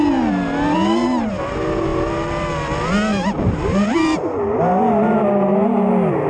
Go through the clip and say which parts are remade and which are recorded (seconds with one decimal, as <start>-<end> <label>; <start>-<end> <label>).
0.0-6.3 recorded